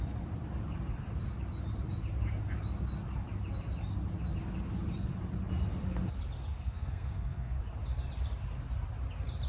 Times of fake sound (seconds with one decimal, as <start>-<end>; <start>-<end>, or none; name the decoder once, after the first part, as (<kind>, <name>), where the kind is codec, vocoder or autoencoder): 6.5-7.6 (codec, SNAC)